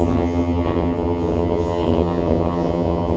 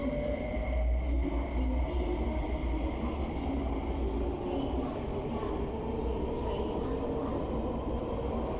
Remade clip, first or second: first